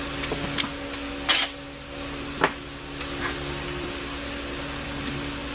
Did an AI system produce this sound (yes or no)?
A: no